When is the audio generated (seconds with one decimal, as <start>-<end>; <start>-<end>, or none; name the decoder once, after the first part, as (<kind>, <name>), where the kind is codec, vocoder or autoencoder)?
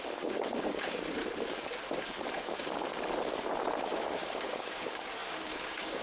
0.0-1.2 (codec, DAC); 4.1-6.0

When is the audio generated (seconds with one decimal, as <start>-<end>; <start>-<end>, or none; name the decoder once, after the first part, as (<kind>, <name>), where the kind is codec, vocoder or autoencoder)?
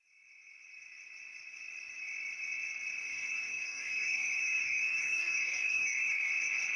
3.0-6.3 (codec, DAC)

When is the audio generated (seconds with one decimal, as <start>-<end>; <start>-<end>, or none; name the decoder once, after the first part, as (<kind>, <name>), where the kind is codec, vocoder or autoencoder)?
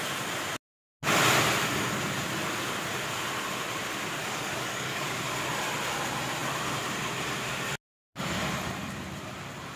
4.2-5.2 (codec, DAC)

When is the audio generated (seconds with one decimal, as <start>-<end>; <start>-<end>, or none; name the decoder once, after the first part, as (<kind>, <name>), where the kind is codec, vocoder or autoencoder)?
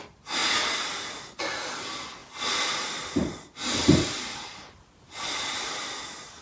none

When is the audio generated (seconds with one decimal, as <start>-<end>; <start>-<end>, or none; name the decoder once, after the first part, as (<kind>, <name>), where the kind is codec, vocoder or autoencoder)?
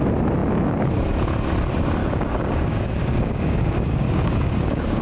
2.0-5.0 (codec, DAC)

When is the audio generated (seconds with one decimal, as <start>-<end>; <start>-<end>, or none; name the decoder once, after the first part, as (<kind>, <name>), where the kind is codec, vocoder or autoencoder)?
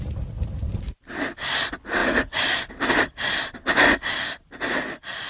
none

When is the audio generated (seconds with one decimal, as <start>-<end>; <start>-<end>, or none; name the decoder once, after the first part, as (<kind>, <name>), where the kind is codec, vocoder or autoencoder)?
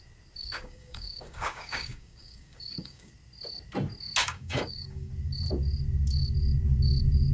0.4-3.1 (codec, DAC); 4.2-5.1